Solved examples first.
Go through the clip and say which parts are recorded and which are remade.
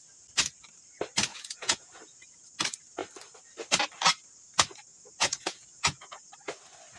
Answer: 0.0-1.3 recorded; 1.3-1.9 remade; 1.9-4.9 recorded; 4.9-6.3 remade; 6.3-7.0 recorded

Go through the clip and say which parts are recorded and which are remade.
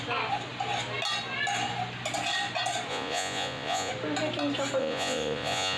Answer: 0.0-2.9 recorded; 2.9-3.9 remade; 3.9-4.8 recorded; 4.8-5.8 remade